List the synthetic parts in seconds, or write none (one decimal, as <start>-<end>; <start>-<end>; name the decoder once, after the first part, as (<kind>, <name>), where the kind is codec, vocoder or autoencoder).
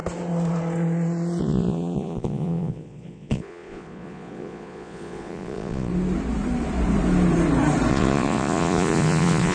1.4-5.9 (vocoder, Vocos); 7.9-9.5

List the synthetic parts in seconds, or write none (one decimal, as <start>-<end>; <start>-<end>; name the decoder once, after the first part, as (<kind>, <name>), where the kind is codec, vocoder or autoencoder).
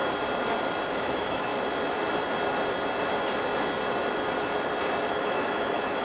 0.9-1.5 (autoencoder, DAC-VAE); 5.1-6.0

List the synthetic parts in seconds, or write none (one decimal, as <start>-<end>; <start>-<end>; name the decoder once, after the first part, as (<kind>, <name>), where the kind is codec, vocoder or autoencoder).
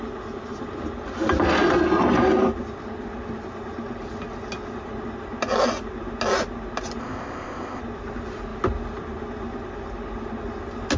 7.0-7.8 (codec, ZipCodec)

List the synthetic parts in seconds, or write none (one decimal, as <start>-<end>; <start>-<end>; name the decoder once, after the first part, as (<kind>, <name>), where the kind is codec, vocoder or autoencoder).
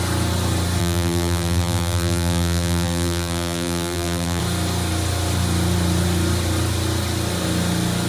0.8-4.4 (vocoder, BigVGAN v2)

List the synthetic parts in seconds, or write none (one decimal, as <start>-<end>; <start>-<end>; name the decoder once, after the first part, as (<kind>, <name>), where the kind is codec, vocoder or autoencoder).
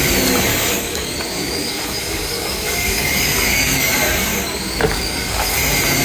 0.5-3.9 (codec, DAC); 4.3-5.6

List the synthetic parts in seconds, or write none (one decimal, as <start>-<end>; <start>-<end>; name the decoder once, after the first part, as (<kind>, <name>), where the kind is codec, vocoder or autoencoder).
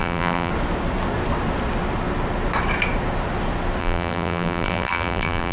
0.0-0.5 (vocoder, BigVGAN v2); 3.8-5.5